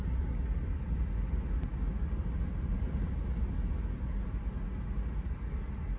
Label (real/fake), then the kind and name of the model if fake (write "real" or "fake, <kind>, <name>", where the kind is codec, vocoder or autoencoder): real